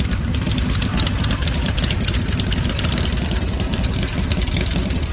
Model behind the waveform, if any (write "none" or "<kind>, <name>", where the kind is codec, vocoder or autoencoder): vocoder, BigVGAN v2